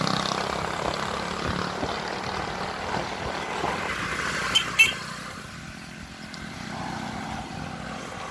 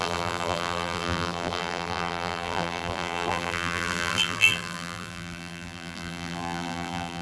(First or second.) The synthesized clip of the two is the second